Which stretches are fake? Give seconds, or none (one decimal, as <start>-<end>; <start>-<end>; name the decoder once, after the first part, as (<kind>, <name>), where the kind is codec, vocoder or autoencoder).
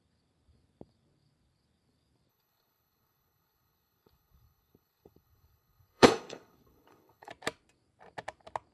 2.3-7.3 (codec, HILCodec)